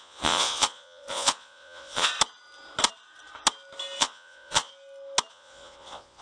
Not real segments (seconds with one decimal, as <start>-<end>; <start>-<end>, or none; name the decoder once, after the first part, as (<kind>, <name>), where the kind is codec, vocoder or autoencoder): 0.0-2.1 (vocoder, Vocos); 4.0-4.7; 5.3-6.2